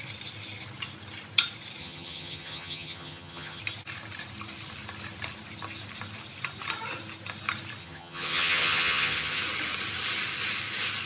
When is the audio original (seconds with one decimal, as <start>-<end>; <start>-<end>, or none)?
0.0-1.8; 3.6-7.8; 9.4-11.1